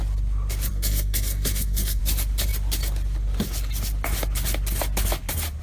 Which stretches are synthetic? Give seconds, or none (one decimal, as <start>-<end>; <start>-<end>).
0.7-2.0

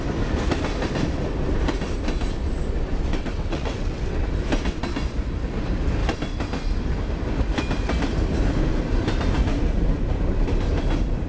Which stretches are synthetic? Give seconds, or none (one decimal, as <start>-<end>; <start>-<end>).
3.1-4.2

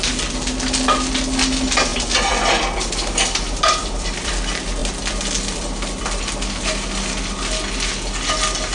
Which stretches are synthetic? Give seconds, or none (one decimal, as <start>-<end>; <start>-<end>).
1.9-4.3; 4.8-6.2

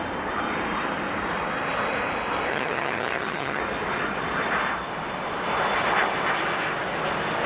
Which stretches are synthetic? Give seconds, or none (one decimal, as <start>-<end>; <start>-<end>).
2.5-3.6

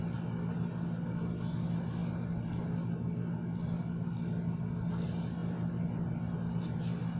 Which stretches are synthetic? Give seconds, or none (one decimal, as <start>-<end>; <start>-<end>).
none

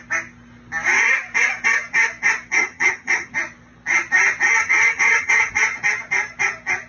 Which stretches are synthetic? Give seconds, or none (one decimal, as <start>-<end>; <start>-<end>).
2.5-3.3; 4.6-5.5

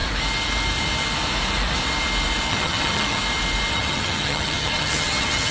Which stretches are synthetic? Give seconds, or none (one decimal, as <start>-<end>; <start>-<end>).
2.5-3.2; 3.7-5.5